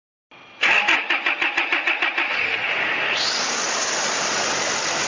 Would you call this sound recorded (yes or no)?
yes